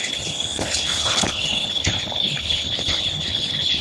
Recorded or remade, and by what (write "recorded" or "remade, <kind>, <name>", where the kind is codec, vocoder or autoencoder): remade, codec, HILCodec